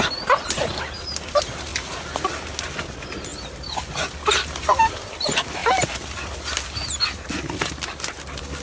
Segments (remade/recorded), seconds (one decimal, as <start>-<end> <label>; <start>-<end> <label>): 0.0-8.6 recorded